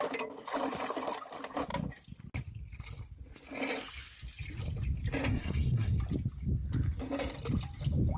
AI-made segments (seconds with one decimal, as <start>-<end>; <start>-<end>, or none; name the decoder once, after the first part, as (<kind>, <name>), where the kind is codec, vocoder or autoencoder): 5.3-6.0 (codec, SNAC)